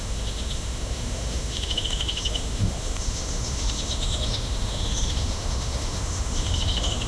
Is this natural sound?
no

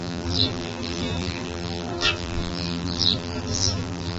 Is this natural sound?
no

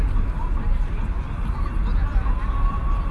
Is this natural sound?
yes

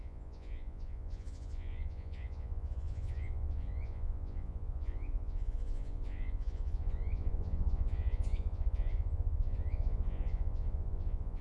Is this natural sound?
no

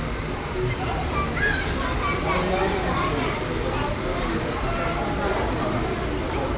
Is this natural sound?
yes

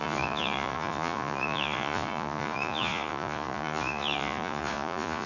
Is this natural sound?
no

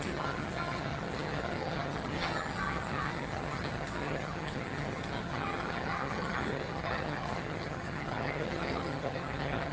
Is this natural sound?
no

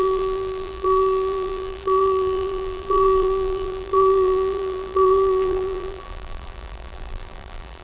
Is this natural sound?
no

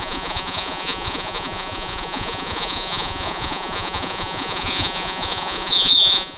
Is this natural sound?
no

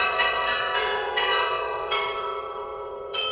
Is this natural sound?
no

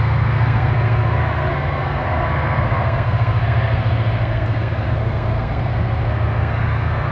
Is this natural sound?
no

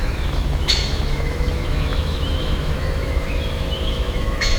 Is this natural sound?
no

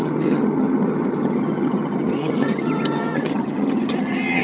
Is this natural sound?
no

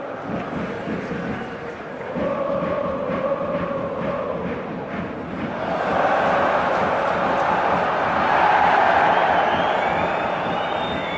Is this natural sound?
yes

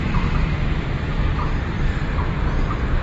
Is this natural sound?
no